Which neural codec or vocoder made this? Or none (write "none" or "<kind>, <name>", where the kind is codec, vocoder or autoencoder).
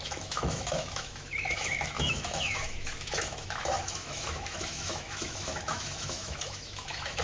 autoencoder, DAC-VAE